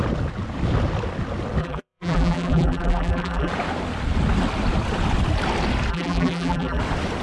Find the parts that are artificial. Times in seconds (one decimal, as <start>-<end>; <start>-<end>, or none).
1.6-3.5; 5.9-6.8